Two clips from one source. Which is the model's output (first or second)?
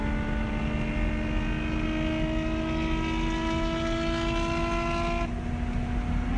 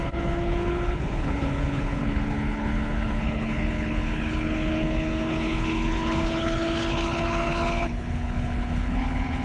second